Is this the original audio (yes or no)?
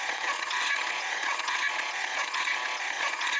no